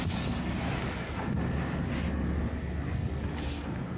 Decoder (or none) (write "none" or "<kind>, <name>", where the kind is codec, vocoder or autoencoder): none